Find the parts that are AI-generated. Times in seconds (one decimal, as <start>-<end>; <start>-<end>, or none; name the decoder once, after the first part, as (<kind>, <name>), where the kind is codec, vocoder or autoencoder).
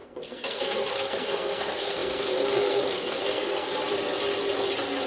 0.0-3.7 (codec, SNAC)